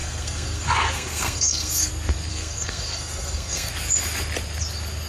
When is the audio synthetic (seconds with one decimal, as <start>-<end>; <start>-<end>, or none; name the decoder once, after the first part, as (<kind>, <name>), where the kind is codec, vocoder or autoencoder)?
0.0-1.9 (codec, SNAC); 2.3-3.7

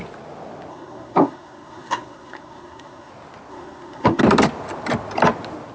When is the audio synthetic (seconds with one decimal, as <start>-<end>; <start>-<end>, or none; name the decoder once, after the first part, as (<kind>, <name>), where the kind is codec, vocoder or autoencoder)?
0.7-3.1 (codec, SNAC); 3.5-4.2

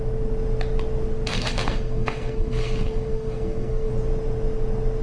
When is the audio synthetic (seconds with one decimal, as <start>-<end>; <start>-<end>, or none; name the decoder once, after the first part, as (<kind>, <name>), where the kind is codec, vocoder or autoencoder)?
1.3-3.9 (codec, SNAC)

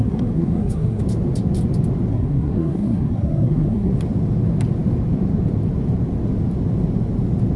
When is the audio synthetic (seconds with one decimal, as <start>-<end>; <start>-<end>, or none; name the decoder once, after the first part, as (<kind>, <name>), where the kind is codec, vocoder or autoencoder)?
0.0-1.0 (codec, SNAC); 2.1-3.9

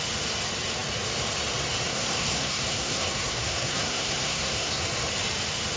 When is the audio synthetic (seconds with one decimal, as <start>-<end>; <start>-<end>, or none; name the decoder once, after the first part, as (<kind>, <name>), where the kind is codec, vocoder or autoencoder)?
1.9-4.8 (codec, SNAC)

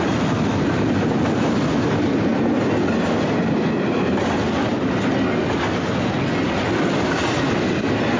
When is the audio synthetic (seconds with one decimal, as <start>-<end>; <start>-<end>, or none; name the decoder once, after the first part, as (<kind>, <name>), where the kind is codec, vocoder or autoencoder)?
none